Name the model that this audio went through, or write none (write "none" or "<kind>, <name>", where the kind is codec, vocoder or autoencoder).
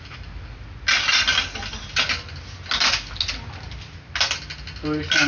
none